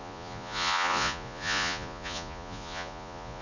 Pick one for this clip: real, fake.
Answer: fake